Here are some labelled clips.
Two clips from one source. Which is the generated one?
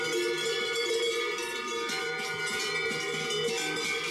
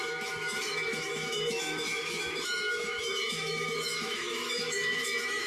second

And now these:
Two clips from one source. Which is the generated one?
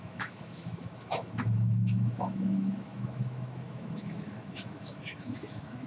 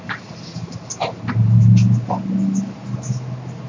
first